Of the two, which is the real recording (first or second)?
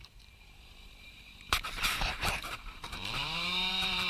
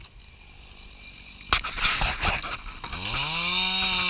second